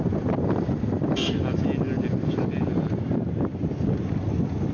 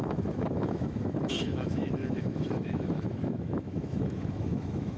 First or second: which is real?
first